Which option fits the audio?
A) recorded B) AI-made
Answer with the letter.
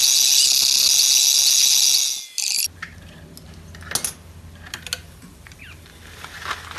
A